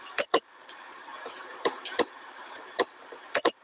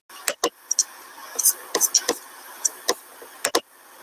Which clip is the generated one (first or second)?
first